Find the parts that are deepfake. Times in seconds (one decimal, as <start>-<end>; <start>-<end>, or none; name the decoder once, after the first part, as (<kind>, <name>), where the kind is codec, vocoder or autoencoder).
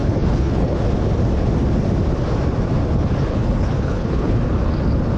0.0-0.8 (codec, HILCodec); 3.3-4.4